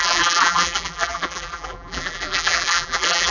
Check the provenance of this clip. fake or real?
fake